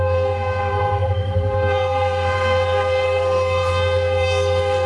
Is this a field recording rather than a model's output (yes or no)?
no